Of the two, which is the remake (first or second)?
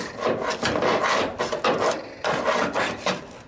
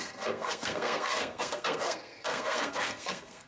second